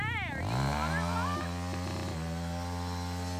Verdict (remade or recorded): recorded